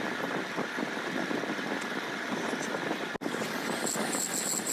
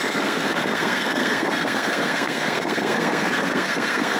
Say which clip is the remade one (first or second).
second